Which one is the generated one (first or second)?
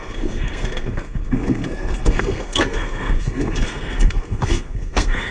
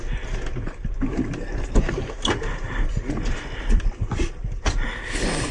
first